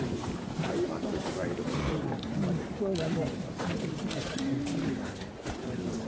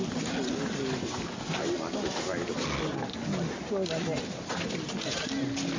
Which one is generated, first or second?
first